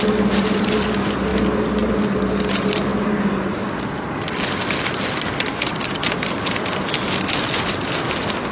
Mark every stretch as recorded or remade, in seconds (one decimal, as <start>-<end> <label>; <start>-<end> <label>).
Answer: 0.0-8.5 recorded